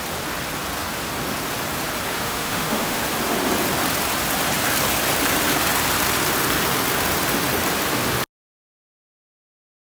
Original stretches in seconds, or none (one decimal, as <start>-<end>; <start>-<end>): 0.0-2.1; 3.0-9.9